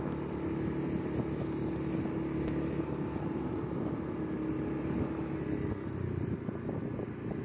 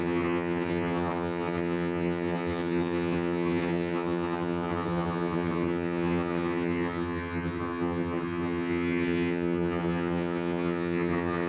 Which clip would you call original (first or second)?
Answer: first